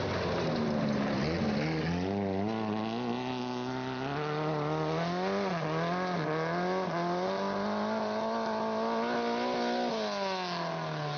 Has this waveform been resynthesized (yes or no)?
no